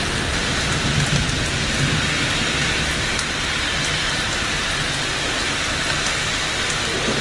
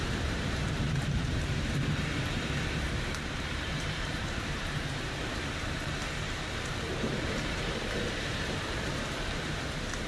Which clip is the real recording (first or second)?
first